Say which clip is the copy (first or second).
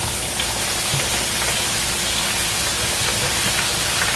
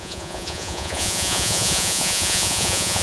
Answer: second